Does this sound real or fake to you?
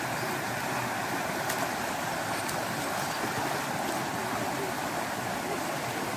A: real